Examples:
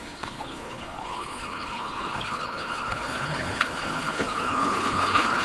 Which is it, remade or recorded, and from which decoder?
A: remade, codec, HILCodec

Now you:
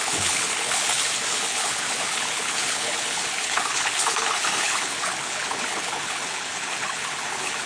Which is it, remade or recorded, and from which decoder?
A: remade, codec, HILCodec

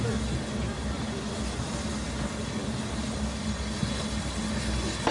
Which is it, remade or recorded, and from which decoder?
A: recorded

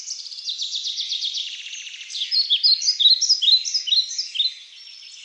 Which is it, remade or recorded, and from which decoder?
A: recorded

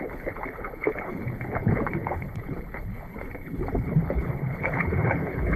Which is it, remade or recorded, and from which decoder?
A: remade, codec, HILCodec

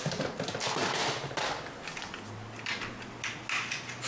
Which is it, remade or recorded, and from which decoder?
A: recorded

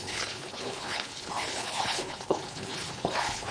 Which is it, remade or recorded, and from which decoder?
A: remade, codec, HILCodec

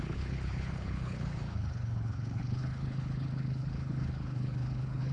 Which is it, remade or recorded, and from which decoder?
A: remade, codec, HILCodec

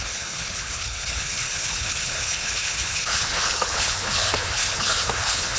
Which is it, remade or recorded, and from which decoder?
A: remade, codec, HILCodec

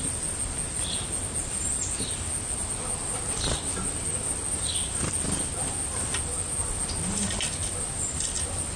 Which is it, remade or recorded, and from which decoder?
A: recorded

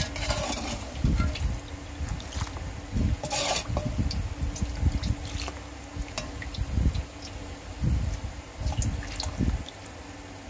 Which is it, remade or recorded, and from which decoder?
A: recorded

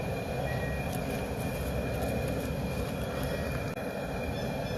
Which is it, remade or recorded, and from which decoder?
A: recorded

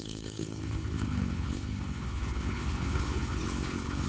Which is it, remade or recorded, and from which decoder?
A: remade, codec, HILCodec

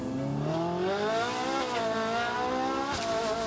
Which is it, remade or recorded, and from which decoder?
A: recorded